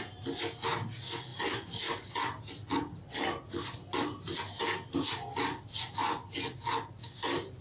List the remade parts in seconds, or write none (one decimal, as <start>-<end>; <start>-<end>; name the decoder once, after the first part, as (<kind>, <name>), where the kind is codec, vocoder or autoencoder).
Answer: none